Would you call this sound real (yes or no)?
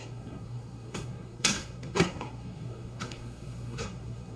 no